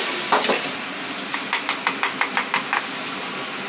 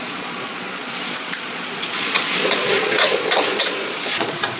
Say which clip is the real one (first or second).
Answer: first